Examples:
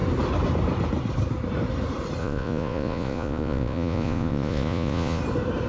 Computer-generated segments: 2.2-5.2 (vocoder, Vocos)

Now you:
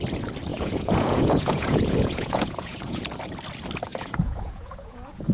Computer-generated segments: 0.5-3.0 (vocoder, Vocos); 3.9-5.3

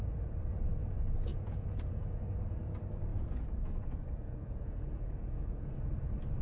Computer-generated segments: 1.3-2.2 (vocoder, Vocos); 3.1-5.7

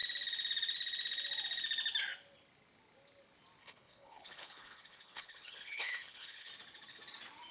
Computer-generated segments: 3.6-6.5 (codec, HILCodec)

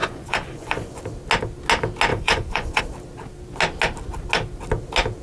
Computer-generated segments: 0.0-1.0 (vocoder, Vocos); 2.1-2.8

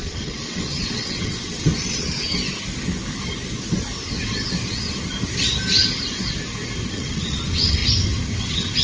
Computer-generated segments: 0.0-2.4 (vocoder, WaveNeXt); 6.9-7.8; 8.4-8.8

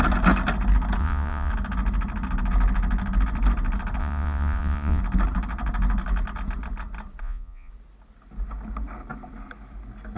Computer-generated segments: 1.0-1.5 (vocoder, Vocos); 4.0-5.0; 7.2-7.7

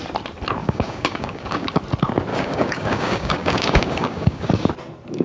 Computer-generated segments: 0.6-1.8 (codec, DAC); 2.3-4.7